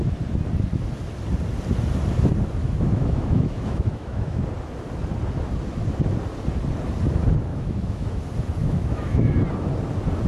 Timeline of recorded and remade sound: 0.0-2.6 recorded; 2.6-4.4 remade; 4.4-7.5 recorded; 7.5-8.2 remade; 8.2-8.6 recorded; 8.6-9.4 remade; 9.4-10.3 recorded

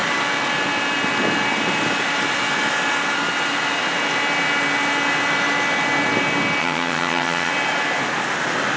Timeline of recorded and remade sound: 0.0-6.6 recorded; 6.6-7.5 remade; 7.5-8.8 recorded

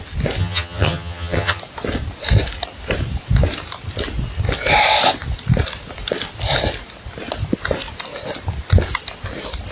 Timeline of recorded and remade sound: 0.0-0.4 recorded; 0.4-1.6 remade; 1.6-9.7 recorded

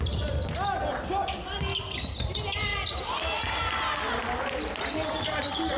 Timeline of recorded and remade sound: 0.0-5.8 recorded

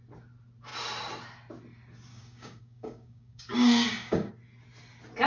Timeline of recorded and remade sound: 0.0-2.1 recorded; 2.1-4.3 remade; 4.3-5.3 recorded

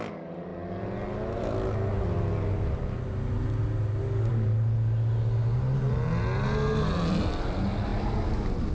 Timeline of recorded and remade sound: 0.0-8.7 recorded

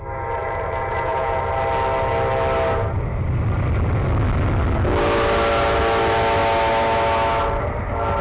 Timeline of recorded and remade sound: 0.0-0.4 recorded; 0.4-1.4 remade; 1.4-8.2 recorded